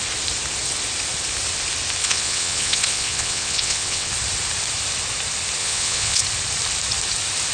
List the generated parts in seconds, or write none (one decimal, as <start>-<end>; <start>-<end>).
2.0-4.1; 5.6-6.2